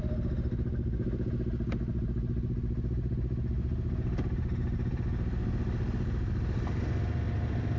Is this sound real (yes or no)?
yes